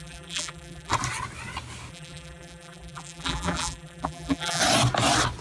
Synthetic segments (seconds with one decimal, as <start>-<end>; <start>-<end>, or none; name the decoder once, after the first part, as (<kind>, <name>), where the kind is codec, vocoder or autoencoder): 0.0-0.9 (vocoder, BigVGAN v2); 1.9-4.6